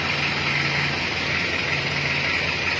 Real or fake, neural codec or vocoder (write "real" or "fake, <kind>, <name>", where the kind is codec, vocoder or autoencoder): real